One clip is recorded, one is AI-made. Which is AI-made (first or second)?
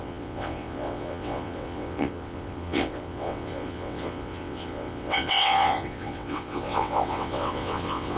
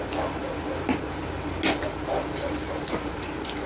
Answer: first